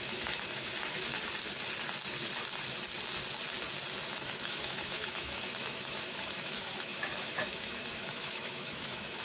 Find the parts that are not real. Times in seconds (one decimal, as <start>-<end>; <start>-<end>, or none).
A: 0.0-0.7; 4.1-9.2